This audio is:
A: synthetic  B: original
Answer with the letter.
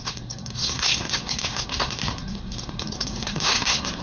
A